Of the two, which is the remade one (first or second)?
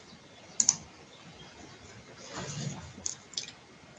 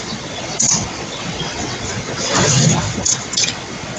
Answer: second